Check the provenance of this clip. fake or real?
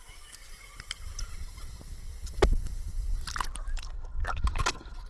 real